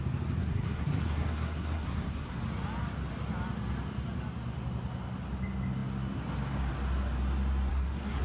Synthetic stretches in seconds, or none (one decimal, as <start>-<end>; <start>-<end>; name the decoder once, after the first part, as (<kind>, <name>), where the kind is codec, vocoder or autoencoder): 0.4-2.4 (codec, SNAC); 7.7-8.2